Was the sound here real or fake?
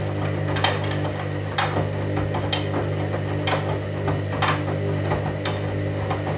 real